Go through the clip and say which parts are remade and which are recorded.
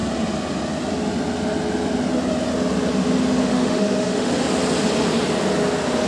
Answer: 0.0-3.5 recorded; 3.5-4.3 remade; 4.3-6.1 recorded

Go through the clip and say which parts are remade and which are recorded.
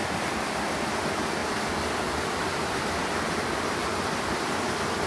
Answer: 0.0-0.9 remade; 0.9-1.4 recorded; 1.4-4.5 remade; 4.5-5.1 recorded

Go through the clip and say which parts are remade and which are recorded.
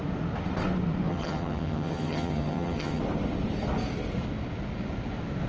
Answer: 0.0-1.1 recorded; 1.1-3.0 remade; 3.0-5.5 recorded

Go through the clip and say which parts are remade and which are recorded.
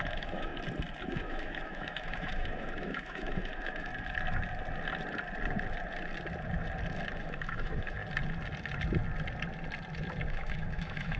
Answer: 0.0-0.5 remade; 0.5-1.1 recorded; 1.1-3.9 remade; 3.9-7.2 recorded; 7.2-8.0 remade; 8.0-10.3 recorded; 10.3-11.2 remade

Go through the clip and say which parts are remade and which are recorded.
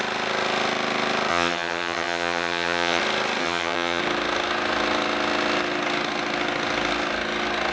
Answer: 0.0-1.3 recorded; 1.3-3.0 remade; 3.0-3.4 recorded; 3.4-4.0 remade; 4.0-7.7 recorded